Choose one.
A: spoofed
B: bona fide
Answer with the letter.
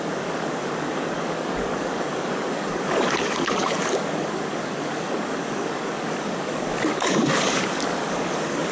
A